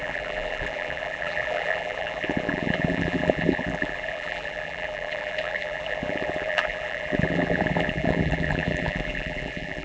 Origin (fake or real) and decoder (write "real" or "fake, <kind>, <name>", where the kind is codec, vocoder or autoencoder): fake, vocoder, BigVGAN v2